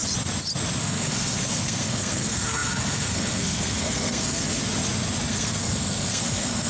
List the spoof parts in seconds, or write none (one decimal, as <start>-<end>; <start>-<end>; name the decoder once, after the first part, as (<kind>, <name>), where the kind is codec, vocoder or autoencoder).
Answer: 0.8-4.6 (codec, SNAC); 5.3-6.7